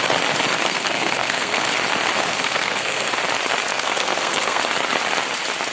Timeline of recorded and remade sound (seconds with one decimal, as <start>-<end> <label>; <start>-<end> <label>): 0.0-0.7 recorded; 0.7-1.7 remade; 1.7-2.3 recorded; 2.3-3.1 remade; 3.1-3.7 recorded; 3.7-4.6 remade; 4.6-5.7 recorded